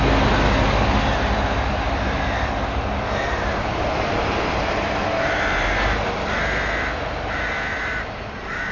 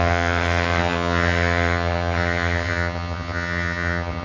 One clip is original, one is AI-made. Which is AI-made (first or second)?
second